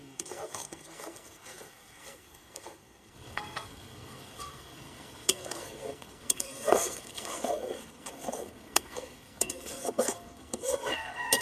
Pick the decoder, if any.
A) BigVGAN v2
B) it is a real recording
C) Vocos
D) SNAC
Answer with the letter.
D